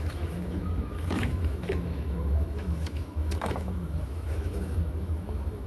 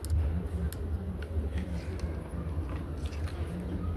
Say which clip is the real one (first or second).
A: second